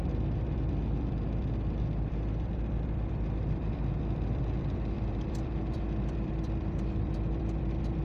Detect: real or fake fake